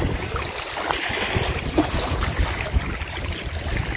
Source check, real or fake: real